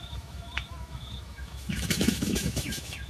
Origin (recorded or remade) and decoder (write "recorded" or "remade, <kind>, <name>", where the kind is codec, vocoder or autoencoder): remade, autoencoder, DAC-VAE